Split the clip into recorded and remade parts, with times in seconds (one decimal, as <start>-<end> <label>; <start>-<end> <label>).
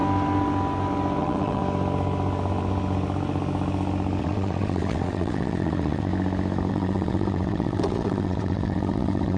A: 0.0-1.2 recorded; 1.2-1.6 remade; 1.6-4.2 recorded; 4.2-6.1 remade; 6.1-6.7 recorded; 6.7-9.4 remade